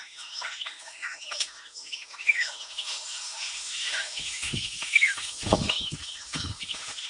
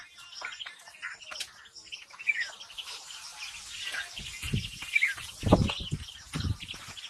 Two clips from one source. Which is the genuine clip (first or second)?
second